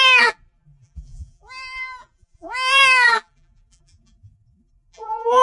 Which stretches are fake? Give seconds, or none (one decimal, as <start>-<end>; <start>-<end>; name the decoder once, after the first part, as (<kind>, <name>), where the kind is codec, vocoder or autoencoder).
0.0-5.4 (vocoder, BigVGAN v2)